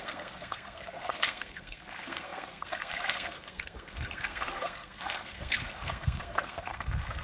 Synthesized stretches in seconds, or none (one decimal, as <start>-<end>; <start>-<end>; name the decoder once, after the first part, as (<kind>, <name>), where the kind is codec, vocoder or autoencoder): 0.0-7.2 (codec, SNAC)